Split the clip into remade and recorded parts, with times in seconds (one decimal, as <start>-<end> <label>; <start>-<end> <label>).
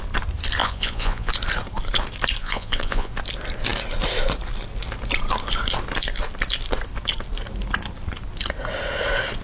0.0-0.6 recorded; 0.6-1.3 remade; 1.3-2.4 recorded; 2.4-3.1 remade; 3.1-9.4 recorded